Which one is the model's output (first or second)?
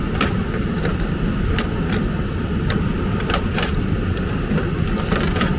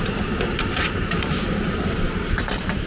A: second